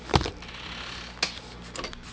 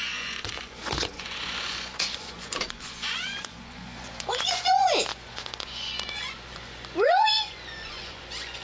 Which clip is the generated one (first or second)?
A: second